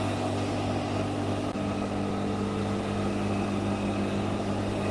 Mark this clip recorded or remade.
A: recorded